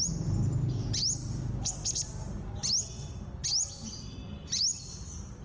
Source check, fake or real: real